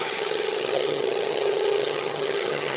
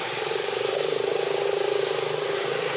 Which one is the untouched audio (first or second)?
second